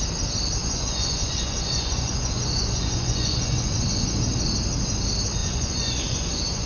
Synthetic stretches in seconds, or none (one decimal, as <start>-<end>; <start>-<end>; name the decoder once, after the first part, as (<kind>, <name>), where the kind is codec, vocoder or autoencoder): 0.6-4.2 (vocoder, Vocos); 5.4-6.7